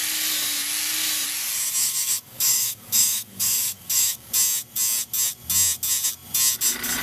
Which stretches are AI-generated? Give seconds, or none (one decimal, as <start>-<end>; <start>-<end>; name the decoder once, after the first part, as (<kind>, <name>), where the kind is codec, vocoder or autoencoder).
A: 1.8-4.3 (codec, DAC)